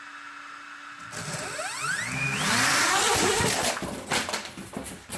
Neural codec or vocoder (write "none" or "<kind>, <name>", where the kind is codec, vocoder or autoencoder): none